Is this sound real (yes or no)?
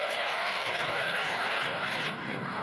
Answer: no